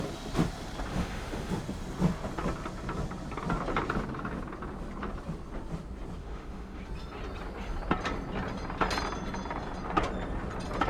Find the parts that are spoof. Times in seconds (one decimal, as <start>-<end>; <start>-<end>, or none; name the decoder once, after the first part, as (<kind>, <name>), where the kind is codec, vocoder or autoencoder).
0.9-1.5 (autoencoder, DAC-VAE); 6.2-6.8